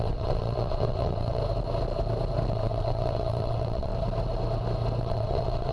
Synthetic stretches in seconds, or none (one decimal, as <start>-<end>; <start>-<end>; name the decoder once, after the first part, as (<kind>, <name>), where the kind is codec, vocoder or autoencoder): 0.0-1.4 (vocoder, WaveNeXt); 2.5-3.9; 5.0-5.7